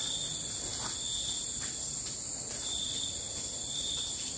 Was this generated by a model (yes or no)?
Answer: no